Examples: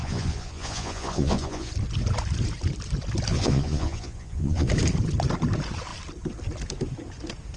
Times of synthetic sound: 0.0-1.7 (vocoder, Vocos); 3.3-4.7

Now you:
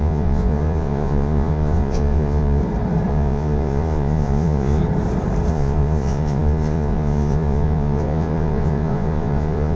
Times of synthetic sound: 0.0-2.6 (vocoder, Vocos); 3.1-4.8; 5.5-9.8